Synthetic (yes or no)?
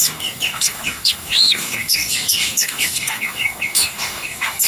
yes